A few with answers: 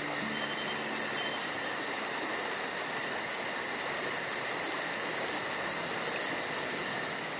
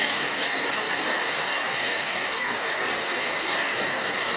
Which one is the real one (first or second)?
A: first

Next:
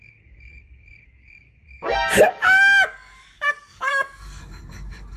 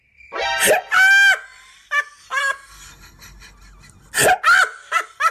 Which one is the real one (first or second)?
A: second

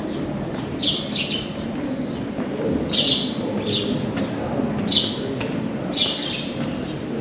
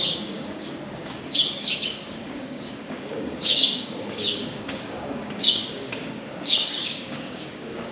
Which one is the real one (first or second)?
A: first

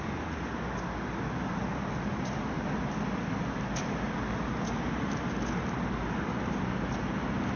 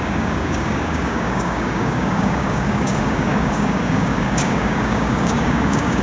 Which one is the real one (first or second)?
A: first